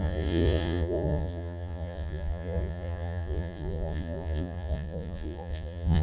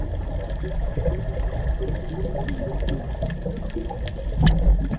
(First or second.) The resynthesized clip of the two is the first